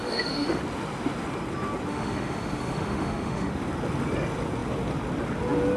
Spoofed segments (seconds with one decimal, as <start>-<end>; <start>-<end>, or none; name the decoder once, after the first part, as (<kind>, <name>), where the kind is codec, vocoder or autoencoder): 0.0-0.6 (autoencoder, DAC-VAE); 1.9-3.5